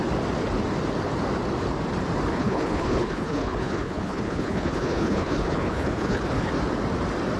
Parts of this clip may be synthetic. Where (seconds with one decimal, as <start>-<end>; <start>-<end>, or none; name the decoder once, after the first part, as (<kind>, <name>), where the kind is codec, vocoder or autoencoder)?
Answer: 2.3-6.5 (codec, HILCodec)